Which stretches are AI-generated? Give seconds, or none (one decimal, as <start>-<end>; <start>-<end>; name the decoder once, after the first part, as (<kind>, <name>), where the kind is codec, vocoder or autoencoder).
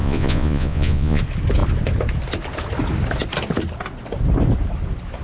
0.0-1.2 (vocoder, Vocos)